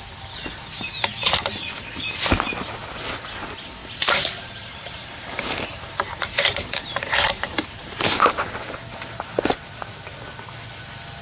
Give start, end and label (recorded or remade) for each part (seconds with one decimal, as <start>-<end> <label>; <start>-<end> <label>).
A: 0.0-3.8 recorded; 3.8-8.5 remade; 8.5-11.2 recorded